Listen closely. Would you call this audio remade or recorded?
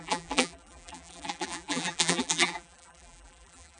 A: remade